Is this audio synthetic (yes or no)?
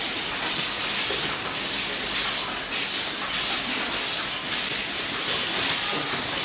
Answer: no